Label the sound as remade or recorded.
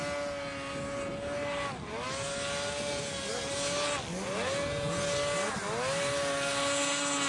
recorded